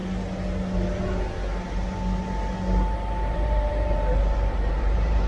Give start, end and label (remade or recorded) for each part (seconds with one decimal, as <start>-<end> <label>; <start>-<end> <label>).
0.0-3.2 recorded; 3.2-5.3 remade